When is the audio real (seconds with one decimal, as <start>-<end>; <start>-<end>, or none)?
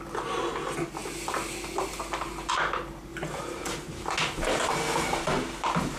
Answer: 0.0-3.1; 3.6-6.0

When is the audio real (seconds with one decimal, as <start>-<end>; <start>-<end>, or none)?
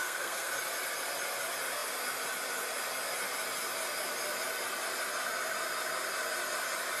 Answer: 0.5-7.0